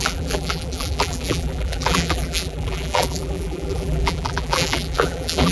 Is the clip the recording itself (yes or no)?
no